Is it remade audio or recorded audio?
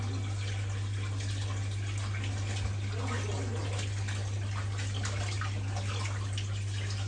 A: recorded